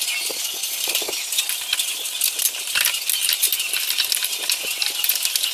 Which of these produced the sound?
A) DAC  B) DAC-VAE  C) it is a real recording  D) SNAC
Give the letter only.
C